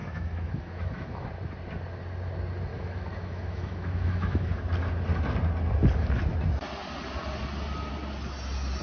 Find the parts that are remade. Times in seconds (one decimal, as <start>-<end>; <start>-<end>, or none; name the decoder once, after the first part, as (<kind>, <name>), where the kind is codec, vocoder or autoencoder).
0.0-1.3 (autoencoder, DAC-VAE); 2.7-4.6